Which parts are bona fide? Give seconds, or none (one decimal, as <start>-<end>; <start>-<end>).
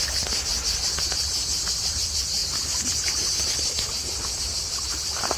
0.0-5.4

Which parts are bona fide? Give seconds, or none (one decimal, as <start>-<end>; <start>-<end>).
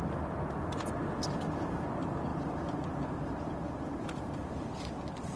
0.0-2.3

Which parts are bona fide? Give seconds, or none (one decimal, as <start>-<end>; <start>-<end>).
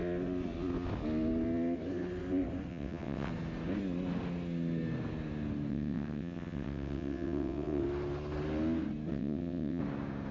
0.0-2.7; 3.3-5.7; 7.8-9.1; 9.8-10.3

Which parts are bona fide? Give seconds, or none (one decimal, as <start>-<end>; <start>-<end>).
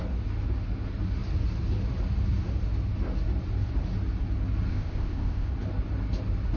0.0-4.7; 5.5-6.6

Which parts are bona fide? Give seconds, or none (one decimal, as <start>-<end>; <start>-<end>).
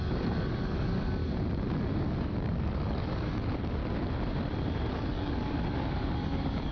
1.2-2.0; 3.8-4.9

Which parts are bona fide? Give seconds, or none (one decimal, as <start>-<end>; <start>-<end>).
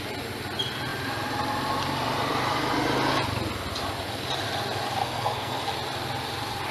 0.0-5.0; 5.7-6.7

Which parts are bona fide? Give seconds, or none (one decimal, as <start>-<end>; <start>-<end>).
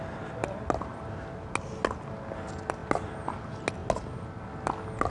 0.0-5.1